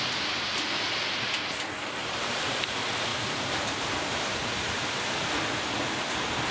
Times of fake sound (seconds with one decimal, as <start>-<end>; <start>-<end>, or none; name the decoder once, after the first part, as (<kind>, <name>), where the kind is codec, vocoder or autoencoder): 2.0-2.7 (vocoder, BigVGAN v2); 3.1-4.6